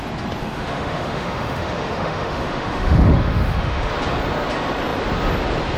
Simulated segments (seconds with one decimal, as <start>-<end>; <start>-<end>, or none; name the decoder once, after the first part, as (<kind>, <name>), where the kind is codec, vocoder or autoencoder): 0.4-3.9 (autoencoder, DAC-VAE)